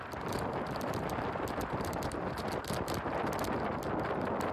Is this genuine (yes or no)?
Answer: yes